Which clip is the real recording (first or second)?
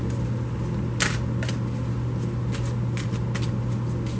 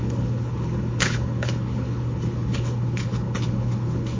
first